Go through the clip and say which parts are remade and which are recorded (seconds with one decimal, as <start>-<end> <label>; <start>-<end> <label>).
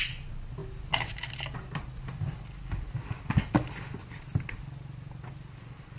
0.0-6.0 recorded